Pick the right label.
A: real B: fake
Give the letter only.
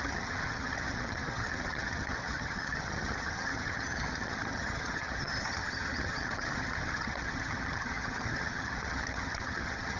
B